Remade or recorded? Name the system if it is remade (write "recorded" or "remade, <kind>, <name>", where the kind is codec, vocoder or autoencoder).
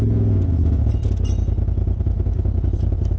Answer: recorded